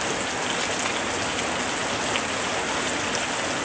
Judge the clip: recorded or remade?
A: recorded